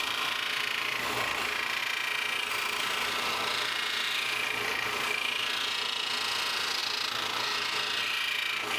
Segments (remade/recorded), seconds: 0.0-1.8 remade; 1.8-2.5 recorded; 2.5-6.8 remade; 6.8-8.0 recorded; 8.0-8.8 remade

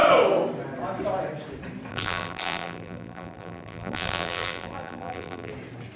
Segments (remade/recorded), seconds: 0.0-1.9 recorded; 1.9-5.5 remade; 5.5-6.0 recorded